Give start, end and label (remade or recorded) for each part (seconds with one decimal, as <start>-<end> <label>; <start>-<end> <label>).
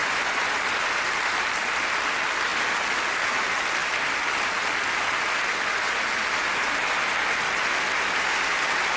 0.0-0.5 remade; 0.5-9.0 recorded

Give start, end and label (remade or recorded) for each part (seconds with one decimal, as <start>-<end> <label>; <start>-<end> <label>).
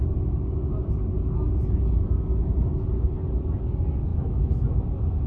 0.0-4.1 recorded; 4.1-4.8 remade; 4.8-5.3 recorded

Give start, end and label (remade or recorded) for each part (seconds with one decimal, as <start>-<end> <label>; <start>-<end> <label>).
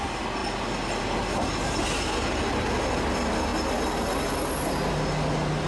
0.0-5.7 recorded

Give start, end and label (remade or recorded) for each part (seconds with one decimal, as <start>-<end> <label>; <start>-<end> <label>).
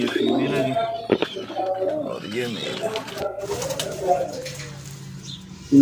0.0-0.8 recorded; 0.8-4.3 remade; 4.3-5.8 recorded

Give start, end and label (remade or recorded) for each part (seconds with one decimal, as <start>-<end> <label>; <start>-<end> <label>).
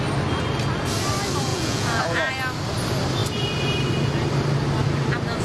0.0-1.5 recorded; 1.5-2.3 remade; 2.3-5.4 recorded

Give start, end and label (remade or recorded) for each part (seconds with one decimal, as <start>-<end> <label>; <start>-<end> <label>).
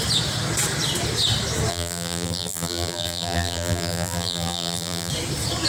0.0-1.7 recorded; 1.7-5.1 remade; 5.1-5.7 recorded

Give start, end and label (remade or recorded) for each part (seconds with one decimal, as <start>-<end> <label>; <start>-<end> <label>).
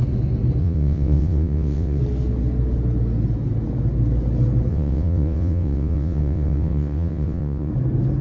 0.0-0.6 recorded; 0.6-2.0 remade; 2.0-4.7 recorded; 4.7-7.7 remade; 7.7-8.2 recorded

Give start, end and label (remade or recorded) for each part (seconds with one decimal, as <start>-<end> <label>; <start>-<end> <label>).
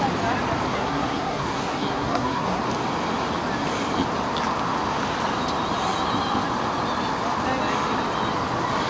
0.0-0.7 recorded; 0.7-2.6 remade; 2.6-8.9 recorded